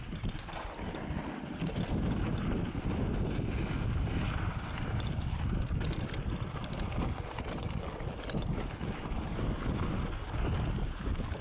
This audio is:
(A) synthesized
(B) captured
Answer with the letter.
B